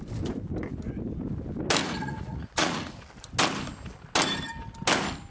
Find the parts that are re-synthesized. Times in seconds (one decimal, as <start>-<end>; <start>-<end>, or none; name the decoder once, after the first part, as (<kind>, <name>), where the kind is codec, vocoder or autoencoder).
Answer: 1.8-2.9 (vocoder, Vocos)